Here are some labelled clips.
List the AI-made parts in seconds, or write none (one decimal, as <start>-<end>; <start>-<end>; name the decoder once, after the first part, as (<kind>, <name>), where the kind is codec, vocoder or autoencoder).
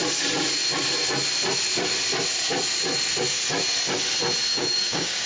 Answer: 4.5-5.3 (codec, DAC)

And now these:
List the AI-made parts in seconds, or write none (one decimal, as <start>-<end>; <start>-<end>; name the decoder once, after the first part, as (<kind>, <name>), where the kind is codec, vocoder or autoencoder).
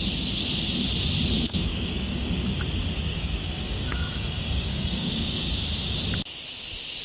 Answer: 1.7-2.5 (codec, DAC); 3.1-5.5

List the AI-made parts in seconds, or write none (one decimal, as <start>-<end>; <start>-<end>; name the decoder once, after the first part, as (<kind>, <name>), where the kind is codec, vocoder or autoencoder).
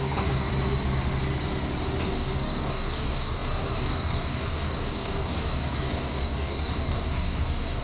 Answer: 0.0-0.5 (codec, DAC); 2.0-7.8